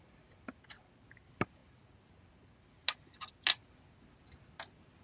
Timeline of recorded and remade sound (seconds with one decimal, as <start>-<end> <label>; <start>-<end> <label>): 0.0-5.0 recorded